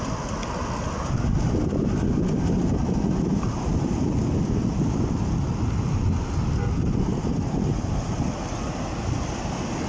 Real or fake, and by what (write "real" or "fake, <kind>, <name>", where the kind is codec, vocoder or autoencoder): real